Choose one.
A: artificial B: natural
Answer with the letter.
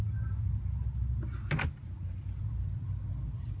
B